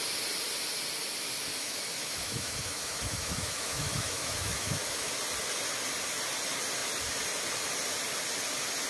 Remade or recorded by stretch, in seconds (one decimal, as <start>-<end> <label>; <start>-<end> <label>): 0.0-1.5 recorded; 1.5-5.1 remade; 5.1-8.9 recorded